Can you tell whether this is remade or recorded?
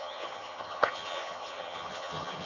remade